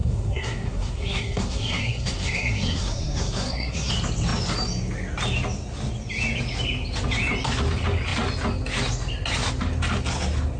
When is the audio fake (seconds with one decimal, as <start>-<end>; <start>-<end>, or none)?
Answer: 0.0-3.9